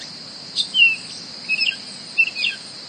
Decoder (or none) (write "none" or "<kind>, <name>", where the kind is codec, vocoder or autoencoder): none